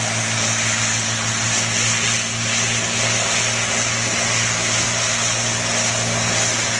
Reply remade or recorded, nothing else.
recorded